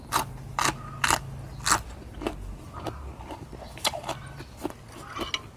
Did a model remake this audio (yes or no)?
no